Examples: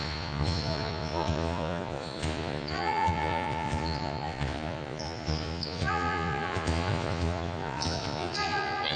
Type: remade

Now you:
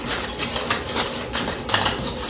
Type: remade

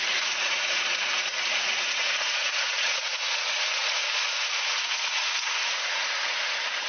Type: remade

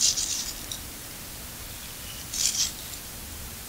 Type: remade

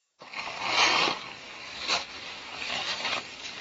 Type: remade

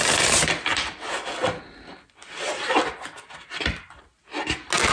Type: recorded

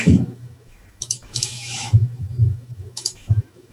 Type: remade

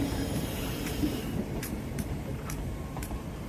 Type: remade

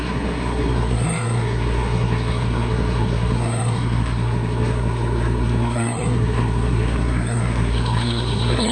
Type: remade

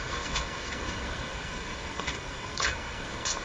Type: remade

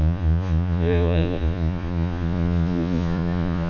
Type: remade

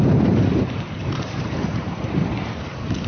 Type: remade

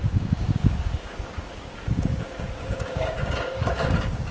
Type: remade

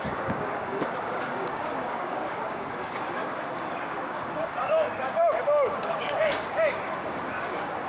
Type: remade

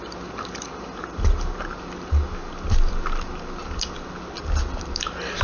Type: recorded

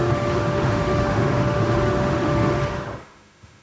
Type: remade